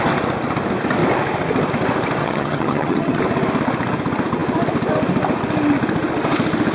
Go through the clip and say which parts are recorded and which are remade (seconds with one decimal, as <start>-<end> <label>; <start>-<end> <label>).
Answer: 0.0-2.2 recorded; 2.2-3.2 remade; 3.2-6.7 recorded